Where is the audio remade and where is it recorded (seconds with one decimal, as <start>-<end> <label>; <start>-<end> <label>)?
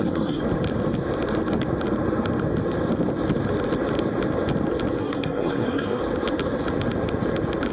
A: 0.0-0.4 remade; 0.4-5.0 recorded; 5.0-6.0 remade; 6.0-7.7 recorded